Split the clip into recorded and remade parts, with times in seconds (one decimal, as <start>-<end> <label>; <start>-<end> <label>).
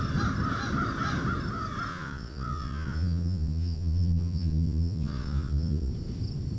0.0-1.9 recorded; 1.9-5.9 remade; 5.9-6.6 recorded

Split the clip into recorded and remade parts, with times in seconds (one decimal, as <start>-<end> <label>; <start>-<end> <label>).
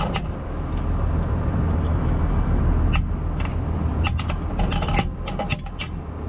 0.0-1.9 recorded; 1.9-2.6 remade; 2.6-6.3 recorded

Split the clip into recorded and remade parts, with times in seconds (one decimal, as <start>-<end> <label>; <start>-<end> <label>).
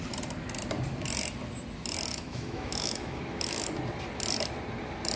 0.0-2.1 recorded; 2.1-3.2 remade; 3.2-5.2 recorded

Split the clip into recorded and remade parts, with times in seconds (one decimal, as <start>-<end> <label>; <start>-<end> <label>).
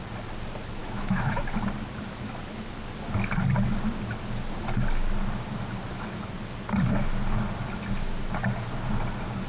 0.0-0.8 recorded; 0.8-1.4 remade; 1.4-9.5 recorded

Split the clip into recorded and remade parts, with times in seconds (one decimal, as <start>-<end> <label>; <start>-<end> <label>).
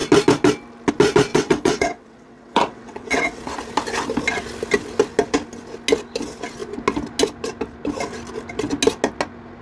0.0-1.3 recorded; 1.3-3.4 remade; 3.4-9.6 recorded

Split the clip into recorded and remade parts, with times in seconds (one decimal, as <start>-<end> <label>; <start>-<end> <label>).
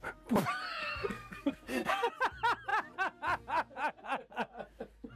0.0-0.8 recorded; 0.8-2.1 remade; 2.1-5.2 recorded